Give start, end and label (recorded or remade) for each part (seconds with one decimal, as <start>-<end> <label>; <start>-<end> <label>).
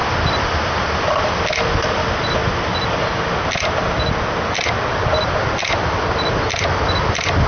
0.0-7.5 recorded